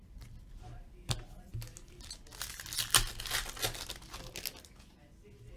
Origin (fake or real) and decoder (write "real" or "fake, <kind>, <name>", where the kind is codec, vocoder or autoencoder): real